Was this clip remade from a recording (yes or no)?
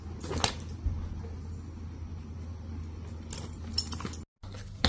no